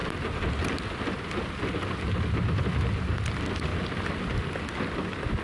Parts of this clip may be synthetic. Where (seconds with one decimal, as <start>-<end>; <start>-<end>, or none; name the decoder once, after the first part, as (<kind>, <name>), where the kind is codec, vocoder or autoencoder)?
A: none